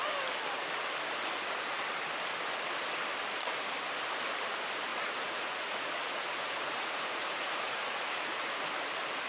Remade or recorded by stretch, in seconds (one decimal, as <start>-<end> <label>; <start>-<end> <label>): 0.0-4.9 recorded; 4.9-8.5 remade; 8.5-9.3 recorded